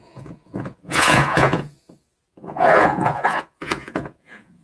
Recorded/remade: remade